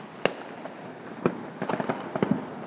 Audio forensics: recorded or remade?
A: recorded